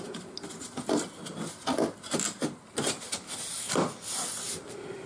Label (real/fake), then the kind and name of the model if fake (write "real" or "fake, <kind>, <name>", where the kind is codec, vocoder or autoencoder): real